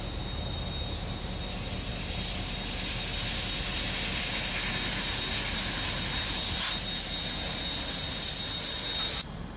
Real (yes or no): yes